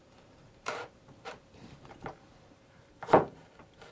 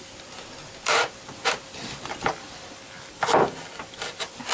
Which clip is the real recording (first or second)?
second